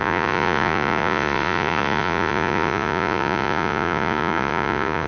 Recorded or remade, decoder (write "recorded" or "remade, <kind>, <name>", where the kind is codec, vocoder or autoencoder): remade, vocoder, Vocos